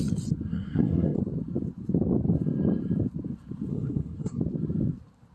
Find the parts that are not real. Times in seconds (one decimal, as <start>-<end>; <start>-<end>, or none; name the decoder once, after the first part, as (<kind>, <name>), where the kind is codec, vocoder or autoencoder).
0.5-1.2 (codec, SNAC); 3.7-4.4